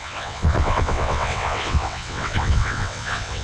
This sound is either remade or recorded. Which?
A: remade